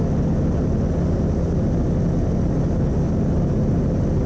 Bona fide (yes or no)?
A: yes